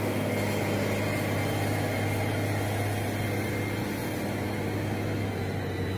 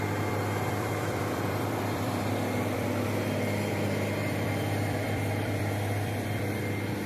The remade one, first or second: second